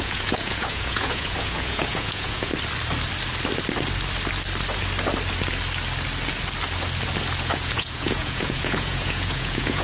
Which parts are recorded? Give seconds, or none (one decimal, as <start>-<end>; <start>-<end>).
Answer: 2.5-7.4